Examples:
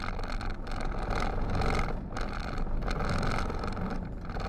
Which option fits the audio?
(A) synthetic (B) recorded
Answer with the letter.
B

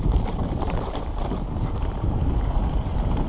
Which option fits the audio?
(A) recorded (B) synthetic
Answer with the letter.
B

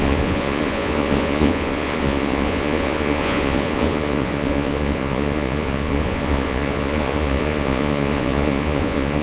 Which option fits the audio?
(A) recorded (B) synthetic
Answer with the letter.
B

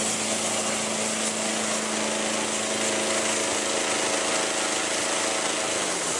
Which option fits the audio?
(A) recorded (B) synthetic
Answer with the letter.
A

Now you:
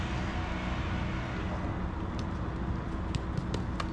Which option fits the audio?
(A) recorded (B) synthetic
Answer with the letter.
A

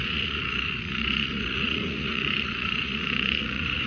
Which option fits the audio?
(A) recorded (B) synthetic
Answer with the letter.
B